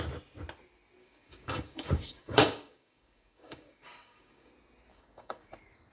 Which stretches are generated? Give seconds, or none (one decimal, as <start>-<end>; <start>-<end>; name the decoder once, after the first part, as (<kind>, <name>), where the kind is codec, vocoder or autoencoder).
1.0-4.5 (codec, DAC); 4.9-5.5